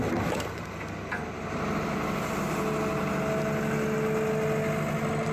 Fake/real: real